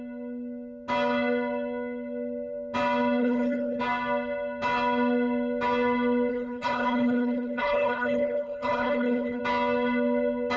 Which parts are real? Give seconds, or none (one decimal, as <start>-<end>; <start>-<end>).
0.0-3.2; 3.8-6.3; 9.4-10.6